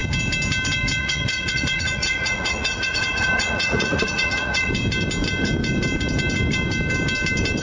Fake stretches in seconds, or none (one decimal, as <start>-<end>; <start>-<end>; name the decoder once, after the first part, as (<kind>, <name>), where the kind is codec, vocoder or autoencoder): 1.0-4.7 (vocoder, Vocos)